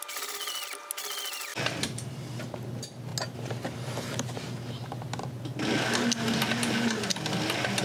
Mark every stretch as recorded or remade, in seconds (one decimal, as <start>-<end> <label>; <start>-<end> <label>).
0.0-1.5 recorded; 1.5-2.1 remade; 2.1-7.8 recorded